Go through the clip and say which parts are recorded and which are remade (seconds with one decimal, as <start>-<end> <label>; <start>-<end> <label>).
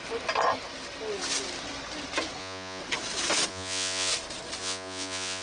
0.0-2.4 recorded; 2.4-2.8 remade; 2.8-3.5 recorded; 3.5-4.1 remade; 4.1-4.6 recorded; 4.6-5.4 remade